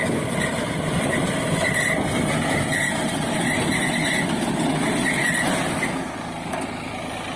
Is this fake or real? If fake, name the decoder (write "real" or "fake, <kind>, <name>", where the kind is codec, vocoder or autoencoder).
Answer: real